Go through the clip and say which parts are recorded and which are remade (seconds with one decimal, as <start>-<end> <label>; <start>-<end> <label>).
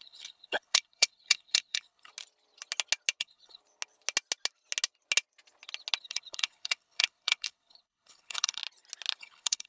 0.0-2.1 remade; 2.1-3.2 recorded; 3.2-3.6 remade; 3.6-6.0 recorded; 6.0-8.6 remade; 8.6-9.2 recorded; 9.2-9.7 remade